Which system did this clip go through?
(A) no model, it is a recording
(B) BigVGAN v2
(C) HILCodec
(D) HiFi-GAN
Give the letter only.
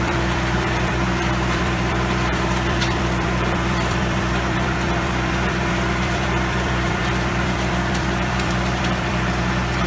B